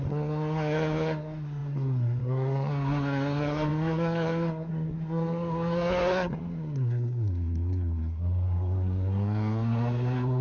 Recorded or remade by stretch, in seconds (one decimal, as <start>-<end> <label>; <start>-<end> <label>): 0.0-10.4 remade

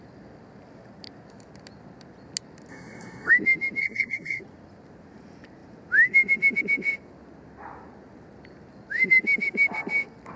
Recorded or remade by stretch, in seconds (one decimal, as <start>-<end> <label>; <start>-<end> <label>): 0.0-2.7 recorded; 2.7-3.3 remade; 3.3-3.8 recorded; 3.8-4.4 remade; 4.4-10.4 recorded

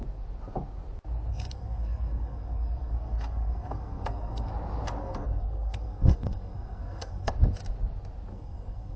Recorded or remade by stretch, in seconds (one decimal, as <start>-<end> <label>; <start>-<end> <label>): 0.0-1.3 recorded; 1.3-4.5 remade; 4.5-5.0 recorded; 5.0-7.3 remade; 7.3-8.3 recorded; 8.3-9.0 remade

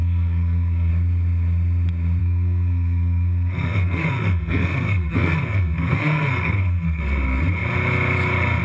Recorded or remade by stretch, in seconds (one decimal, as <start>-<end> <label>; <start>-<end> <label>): 0.0-0.9 remade; 0.9-2.2 recorded; 2.2-7.0 remade; 7.0-8.6 recorded

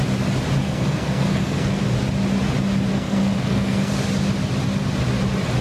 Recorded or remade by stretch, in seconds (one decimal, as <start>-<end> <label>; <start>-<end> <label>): 0.0-0.6 recorded; 0.6-1.8 remade; 1.8-2.9 recorded; 2.9-3.9 remade; 3.9-5.6 recorded

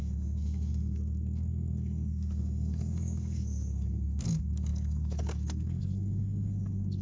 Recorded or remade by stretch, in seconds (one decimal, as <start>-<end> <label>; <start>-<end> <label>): 0.0-7.0 remade

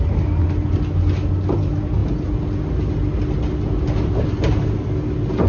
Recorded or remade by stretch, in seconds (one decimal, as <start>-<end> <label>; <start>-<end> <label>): 0.0-5.5 recorded